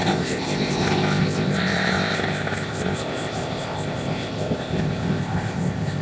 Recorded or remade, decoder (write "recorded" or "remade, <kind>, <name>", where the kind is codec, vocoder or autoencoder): remade, codec, ZipCodec